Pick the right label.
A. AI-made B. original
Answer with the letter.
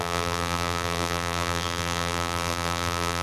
A